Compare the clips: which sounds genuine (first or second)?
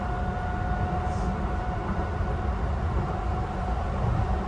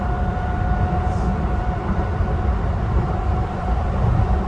first